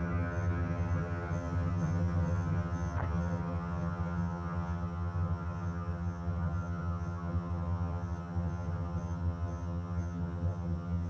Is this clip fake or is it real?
fake